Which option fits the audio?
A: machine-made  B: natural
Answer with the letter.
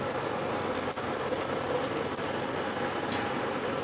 B